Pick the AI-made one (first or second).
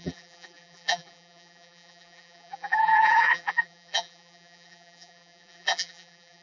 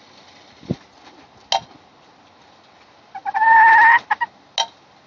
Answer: first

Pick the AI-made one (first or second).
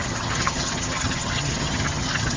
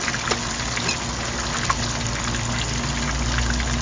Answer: first